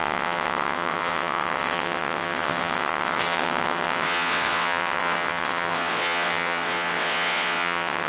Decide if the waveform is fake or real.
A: fake